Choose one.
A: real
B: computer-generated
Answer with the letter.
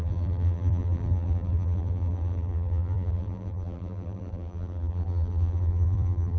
B